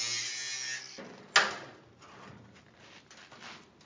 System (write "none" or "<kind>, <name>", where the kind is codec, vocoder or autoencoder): none